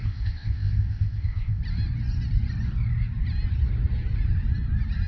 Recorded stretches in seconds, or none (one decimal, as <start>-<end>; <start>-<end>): 1.6-5.1